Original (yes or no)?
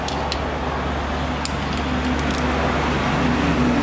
yes